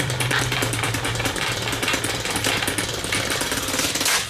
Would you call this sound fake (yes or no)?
yes